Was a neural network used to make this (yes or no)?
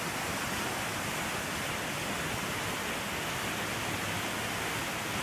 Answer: no